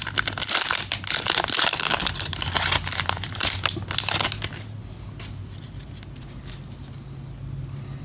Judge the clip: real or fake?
real